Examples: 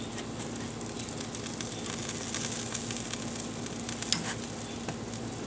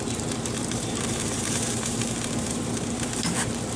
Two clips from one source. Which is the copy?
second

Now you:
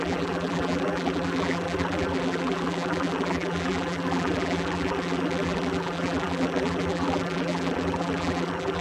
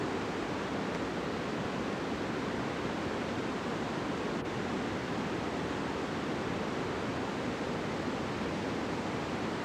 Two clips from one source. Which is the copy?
first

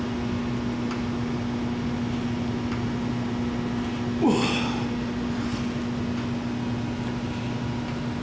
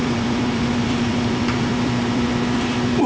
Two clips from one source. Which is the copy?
second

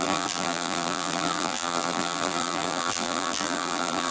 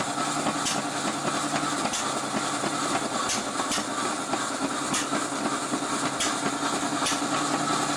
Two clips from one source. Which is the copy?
first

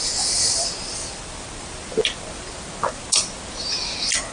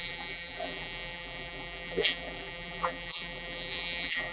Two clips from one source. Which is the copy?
second